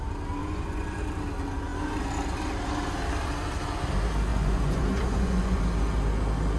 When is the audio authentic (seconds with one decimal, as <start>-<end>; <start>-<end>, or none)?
0.0-0.4; 1.0-4.3; 5.6-6.6